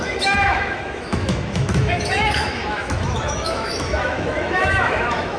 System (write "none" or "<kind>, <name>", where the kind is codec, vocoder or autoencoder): autoencoder, DAC-VAE